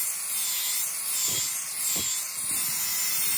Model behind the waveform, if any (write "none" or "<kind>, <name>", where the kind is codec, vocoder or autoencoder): none